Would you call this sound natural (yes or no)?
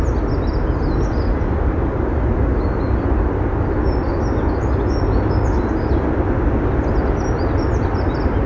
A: yes